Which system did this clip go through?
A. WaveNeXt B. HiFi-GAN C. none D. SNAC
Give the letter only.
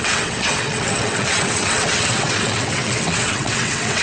A